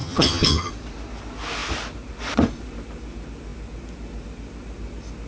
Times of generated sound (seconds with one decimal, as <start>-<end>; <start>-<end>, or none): 0.0-0.7

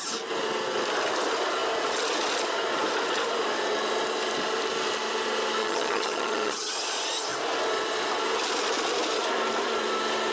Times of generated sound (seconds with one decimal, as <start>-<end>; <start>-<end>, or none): 5.6-6.7

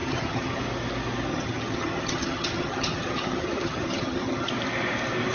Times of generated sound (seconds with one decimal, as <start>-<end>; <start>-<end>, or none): 0.0-0.6; 1.3-4.5

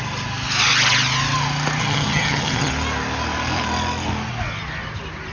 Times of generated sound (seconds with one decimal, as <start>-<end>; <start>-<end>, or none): 1.8-2.7